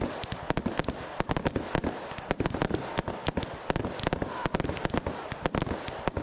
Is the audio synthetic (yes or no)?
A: no